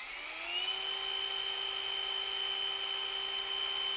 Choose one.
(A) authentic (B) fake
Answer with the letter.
A